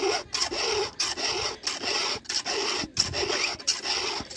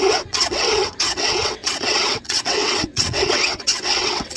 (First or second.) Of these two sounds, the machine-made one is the second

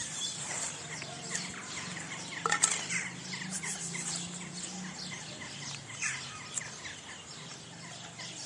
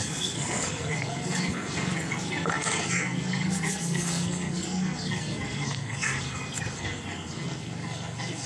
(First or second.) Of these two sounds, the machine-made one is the second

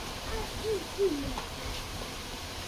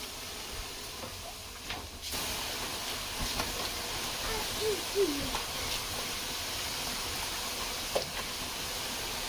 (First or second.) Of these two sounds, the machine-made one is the first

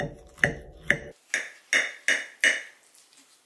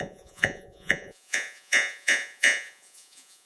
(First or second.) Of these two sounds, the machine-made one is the second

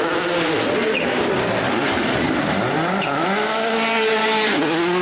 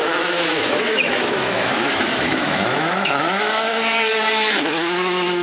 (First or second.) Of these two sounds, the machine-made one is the second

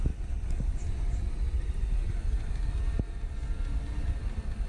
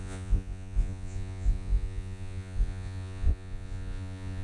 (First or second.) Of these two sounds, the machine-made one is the second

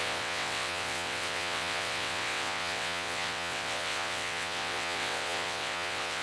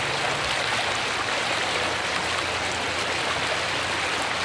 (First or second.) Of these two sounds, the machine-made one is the first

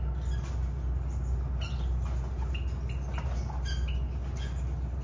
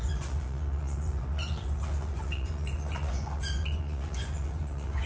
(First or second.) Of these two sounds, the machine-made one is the second